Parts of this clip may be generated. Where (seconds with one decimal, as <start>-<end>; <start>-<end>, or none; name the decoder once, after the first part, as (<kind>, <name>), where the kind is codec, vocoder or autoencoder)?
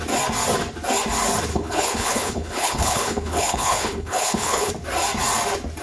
1.5-4.7 (codec, HILCodec)